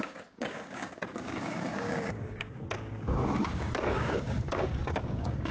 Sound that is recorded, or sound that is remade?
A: remade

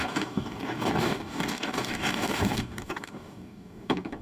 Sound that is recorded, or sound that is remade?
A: remade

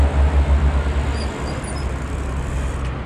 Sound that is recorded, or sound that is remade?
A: recorded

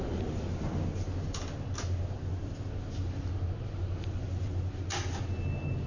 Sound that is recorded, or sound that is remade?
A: recorded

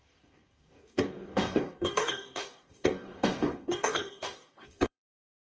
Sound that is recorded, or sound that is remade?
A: remade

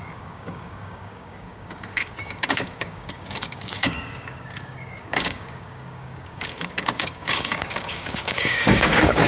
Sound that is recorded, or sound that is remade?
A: remade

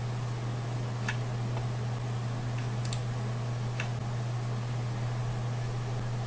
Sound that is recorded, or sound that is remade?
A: recorded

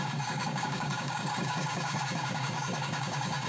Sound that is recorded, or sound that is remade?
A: remade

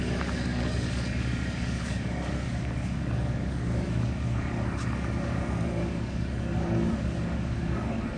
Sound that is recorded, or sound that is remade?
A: remade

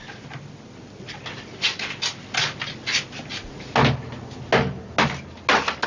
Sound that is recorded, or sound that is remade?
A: recorded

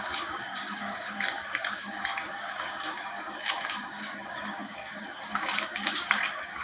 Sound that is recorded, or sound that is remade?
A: remade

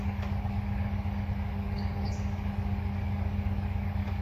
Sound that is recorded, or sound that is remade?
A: remade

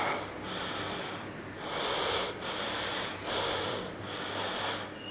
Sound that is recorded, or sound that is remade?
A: recorded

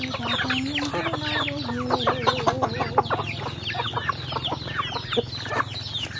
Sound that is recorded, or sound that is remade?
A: recorded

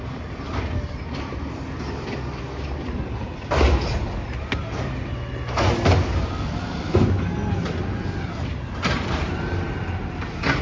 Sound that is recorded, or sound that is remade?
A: recorded